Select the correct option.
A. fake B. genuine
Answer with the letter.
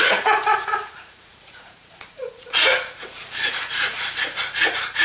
A